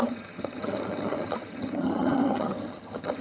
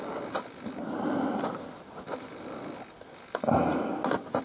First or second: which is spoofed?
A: first